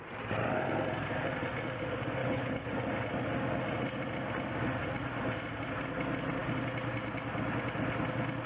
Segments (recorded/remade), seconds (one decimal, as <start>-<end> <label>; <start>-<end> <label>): 0.0-2.2 recorded; 2.2-2.7 remade; 2.7-8.5 recorded